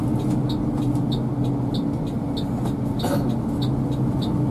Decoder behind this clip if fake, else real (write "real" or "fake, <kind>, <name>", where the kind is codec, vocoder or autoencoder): real